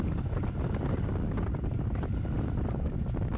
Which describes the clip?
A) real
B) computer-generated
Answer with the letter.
A